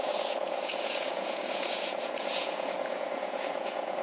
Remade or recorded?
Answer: remade